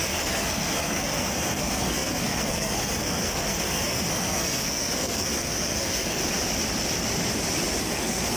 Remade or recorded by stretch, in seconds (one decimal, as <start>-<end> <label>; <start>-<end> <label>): 0.0-6.2 remade; 6.2-7.8 recorded; 7.8-8.4 remade